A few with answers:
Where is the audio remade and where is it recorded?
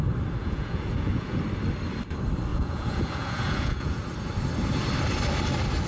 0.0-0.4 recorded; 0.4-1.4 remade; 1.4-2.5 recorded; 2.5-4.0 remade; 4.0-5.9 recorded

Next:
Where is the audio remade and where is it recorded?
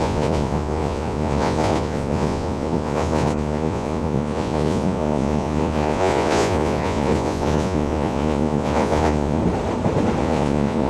0.0-9.4 remade; 9.4-10.2 recorded; 10.2-10.9 remade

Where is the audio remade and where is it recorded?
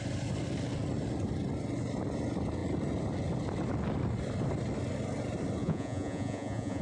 0.0-5.6 recorded; 5.6-6.8 remade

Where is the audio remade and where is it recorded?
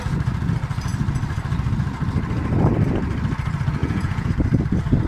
0.0-3.8 recorded; 3.8-4.3 remade; 4.3-5.1 recorded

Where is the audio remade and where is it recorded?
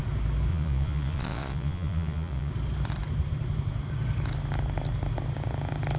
0.0-0.5 recorded; 0.5-2.5 remade; 2.5-6.0 recorded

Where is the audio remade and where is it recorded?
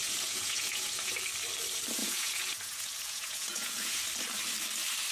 0.0-1.1 remade; 1.1-2.0 recorded; 2.0-4.0 remade; 4.0-5.1 recorded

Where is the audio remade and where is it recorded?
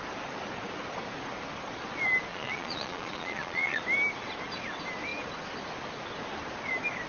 0.0-2.3 recorded; 2.3-3.8 remade; 3.8-7.1 recorded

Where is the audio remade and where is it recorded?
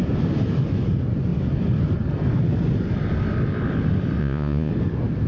0.0-4.2 recorded; 4.2-4.7 remade; 4.7-5.3 recorded